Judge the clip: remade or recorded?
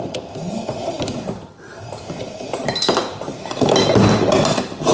recorded